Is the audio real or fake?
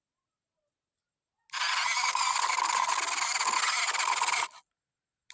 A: real